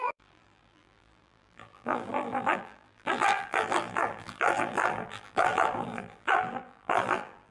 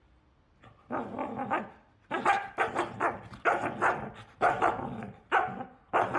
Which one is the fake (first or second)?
first